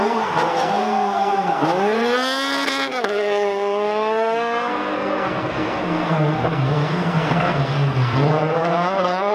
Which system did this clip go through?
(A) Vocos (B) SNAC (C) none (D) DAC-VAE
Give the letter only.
B